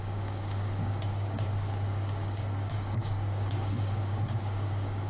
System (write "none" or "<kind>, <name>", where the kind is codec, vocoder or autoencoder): codec, DAC